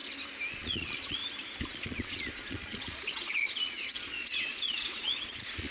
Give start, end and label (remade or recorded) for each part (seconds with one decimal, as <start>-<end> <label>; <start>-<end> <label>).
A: 0.0-0.5 recorded; 0.5-1.2 remade; 1.2-1.7 recorded; 1.7-5.7 remade